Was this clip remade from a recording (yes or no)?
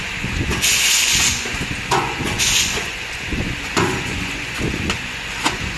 yes